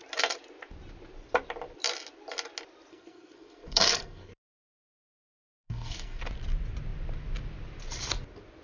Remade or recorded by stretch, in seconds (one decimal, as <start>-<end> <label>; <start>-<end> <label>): 0.0-2.9 recorded; 2.9-6.2 remade; 6.2-8.6 recorded